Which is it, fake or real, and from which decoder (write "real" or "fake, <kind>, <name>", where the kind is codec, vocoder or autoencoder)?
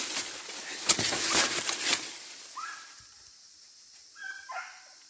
real